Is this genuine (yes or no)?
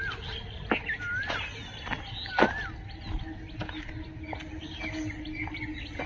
yes